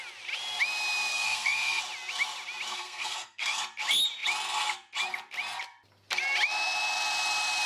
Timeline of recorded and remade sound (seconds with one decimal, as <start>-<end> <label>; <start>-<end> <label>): 0.0-1.1 recorded; 1.1-1.8 remade; 1.8-2.7 recorded; 2.7-3.6 remade; 3.6-7.7 recorded